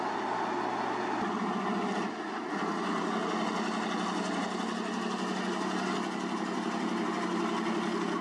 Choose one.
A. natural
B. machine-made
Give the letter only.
A